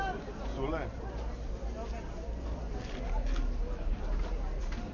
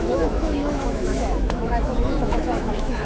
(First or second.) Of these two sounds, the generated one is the second